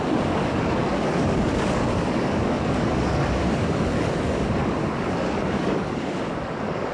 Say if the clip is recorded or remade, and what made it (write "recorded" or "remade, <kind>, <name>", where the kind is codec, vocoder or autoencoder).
remade, codec, DAC